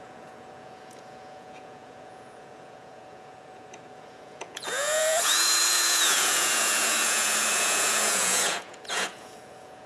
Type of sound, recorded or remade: remade